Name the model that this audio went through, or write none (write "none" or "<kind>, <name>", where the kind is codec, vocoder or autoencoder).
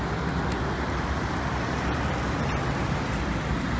none